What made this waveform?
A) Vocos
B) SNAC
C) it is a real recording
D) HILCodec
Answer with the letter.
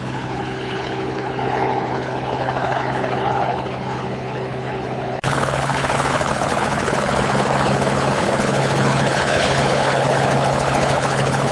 D